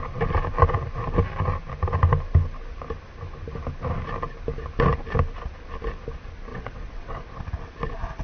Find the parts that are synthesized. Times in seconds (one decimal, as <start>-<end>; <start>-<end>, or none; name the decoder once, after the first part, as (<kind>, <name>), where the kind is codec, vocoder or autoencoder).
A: 6.5-7.4 (vocoder, WaveNeXt)